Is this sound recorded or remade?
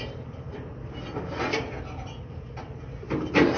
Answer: recorded